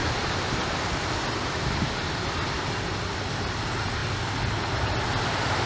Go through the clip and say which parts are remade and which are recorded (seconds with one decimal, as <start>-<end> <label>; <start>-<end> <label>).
0.0-5.7 recorded

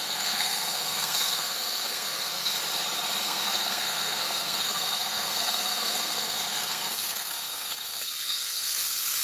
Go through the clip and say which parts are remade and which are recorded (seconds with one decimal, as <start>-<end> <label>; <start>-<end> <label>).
0.0-2.6 remade; 2.6-3.2 recorded; 3.2-9.2 remade

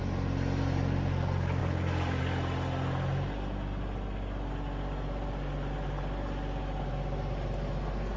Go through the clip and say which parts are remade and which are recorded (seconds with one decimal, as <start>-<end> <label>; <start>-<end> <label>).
0.0-8.2 recorded

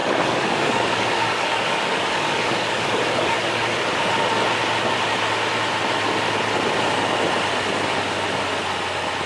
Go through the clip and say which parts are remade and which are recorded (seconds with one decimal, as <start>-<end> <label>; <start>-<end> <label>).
0.0-4.1 remade; 4.1-9.3 recorded

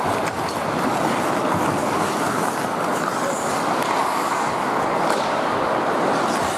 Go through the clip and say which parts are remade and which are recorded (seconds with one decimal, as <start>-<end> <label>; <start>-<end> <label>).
0.0-1.8 recorded; 1.8-2.4 remade; 2.4-4.0 recorded; 4.0-5.7 remade; 5.7-6.6 recorded

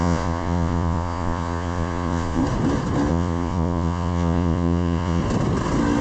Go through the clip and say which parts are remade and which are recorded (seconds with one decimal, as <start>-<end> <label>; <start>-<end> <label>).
0.0-2.4 remade; 2.4-3.1 recorded; 3.1-5.2 remade; 5.2-6.0 recorded